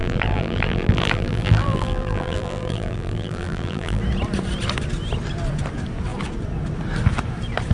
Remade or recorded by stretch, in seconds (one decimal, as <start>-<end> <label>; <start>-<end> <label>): 0.0-4.0 remade; 4.0-7.7 recorded